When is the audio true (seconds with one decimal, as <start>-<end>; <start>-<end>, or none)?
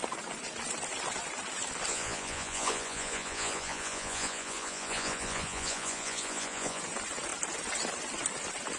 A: 0.0-1.9; 6.8-8.8